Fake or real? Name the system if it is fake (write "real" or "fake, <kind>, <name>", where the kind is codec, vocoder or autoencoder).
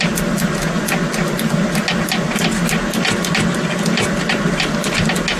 real